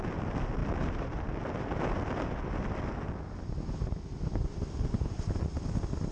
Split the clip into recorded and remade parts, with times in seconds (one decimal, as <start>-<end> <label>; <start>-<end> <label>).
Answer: 0.0-0.6 recorded; 0.6-2.8 remade; 2.8-6.1 recorded